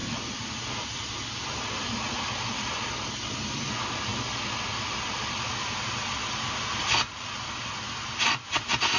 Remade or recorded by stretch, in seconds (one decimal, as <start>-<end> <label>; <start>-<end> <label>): 0.0-9.0 recorded